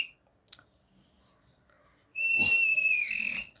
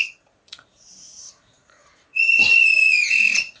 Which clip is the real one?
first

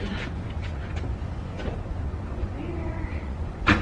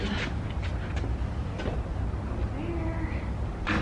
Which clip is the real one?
second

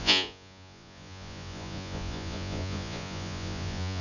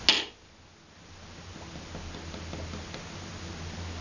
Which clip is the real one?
second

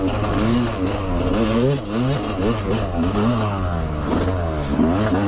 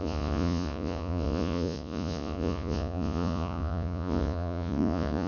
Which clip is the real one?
first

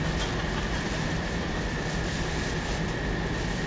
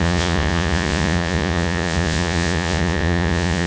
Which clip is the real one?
first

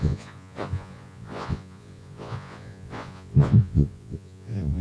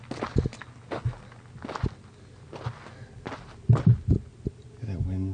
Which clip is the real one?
second